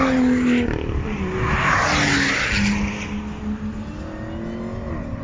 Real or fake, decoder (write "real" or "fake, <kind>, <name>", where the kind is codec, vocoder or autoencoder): real